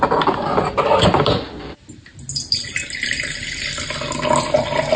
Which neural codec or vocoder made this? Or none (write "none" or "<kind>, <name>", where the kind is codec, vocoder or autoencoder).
none